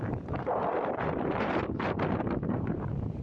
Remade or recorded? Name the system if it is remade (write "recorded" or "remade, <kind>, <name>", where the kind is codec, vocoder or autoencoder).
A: remade, vocoder, BigVGAN v2